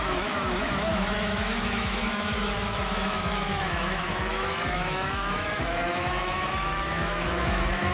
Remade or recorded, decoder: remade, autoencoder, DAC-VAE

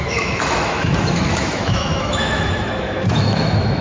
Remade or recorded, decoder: remade, autoencoder, DAC-VAE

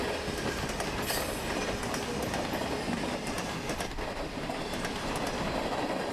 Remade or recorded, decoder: recorded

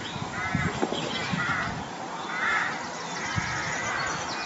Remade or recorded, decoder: recorded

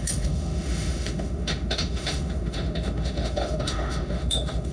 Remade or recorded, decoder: remade, autoencoder, DAC-VAE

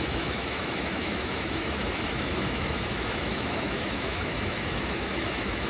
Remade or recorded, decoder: remade, autoencoder, DAC-VAE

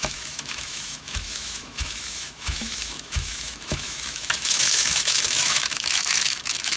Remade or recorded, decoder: remade, autoencoder, DAC-VAE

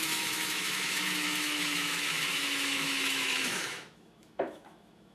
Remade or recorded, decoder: remade, autoencoder, DAC-VAE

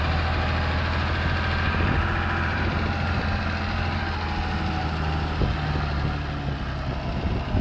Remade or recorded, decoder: recorded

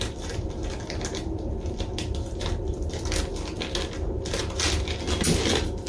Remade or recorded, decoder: recorded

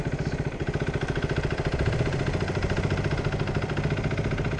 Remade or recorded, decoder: recorded